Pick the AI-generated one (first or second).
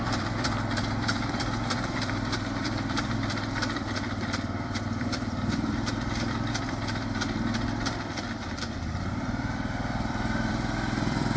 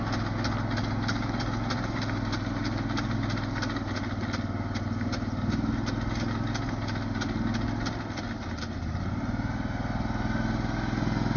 first